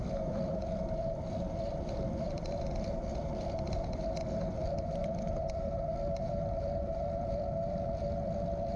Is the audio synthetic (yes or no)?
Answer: yes